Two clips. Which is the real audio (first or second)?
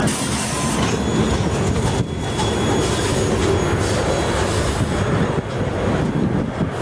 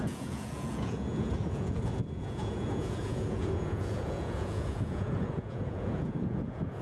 first